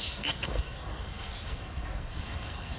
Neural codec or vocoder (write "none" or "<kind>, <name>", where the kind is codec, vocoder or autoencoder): codec, SNAC